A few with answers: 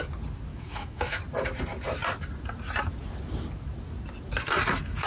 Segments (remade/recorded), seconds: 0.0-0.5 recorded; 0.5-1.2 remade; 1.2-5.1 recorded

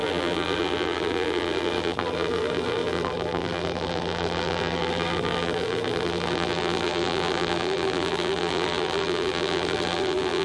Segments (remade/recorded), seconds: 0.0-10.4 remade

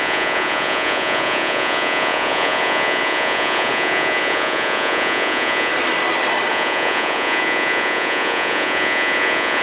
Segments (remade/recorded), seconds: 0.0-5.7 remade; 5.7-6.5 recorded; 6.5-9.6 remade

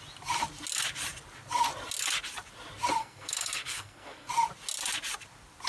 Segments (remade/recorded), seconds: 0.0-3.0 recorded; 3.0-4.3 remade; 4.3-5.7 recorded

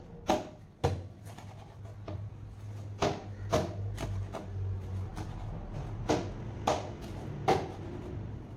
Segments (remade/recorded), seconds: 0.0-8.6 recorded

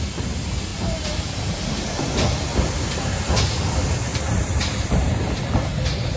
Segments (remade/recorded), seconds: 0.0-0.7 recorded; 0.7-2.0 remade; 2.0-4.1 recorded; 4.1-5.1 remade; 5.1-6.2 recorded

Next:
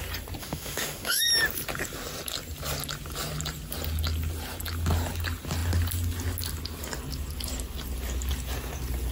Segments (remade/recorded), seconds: 0.0-0.4 recorded; 0.4-1.3 remade; 1.3-9.1 recorded